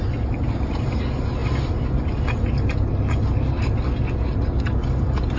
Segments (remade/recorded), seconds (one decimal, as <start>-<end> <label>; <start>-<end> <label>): 0.0-5.4 recorded